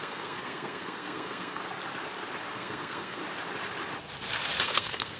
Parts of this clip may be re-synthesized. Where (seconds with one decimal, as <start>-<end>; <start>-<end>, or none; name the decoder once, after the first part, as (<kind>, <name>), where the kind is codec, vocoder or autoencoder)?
0.0-1.6 (codec, SNAC); 2.5-3.2; 4.6-5.2